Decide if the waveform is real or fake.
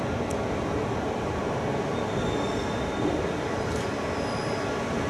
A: real